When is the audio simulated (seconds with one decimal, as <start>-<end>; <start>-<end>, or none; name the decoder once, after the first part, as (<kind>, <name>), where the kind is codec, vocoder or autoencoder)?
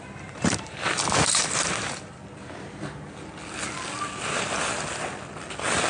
0.0-2.2 (vocoder, BigVGAN v2)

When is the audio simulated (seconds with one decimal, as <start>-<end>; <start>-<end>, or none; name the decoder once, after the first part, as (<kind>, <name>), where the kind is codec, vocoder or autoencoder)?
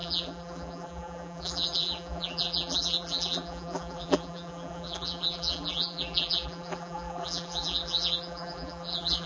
0.0-9.3 (vocoder, BigVGAN v2)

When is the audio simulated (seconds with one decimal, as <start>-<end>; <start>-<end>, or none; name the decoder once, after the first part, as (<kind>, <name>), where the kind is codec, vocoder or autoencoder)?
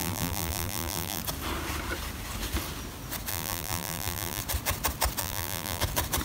0.0-1.2 (vocoder, BigVGAN v2); 3.3-4.4; 5.2-5.8